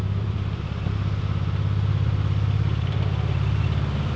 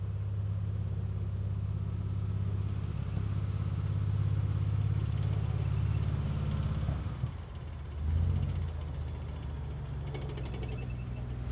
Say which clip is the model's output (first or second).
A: first